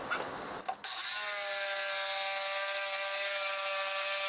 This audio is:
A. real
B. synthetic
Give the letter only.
A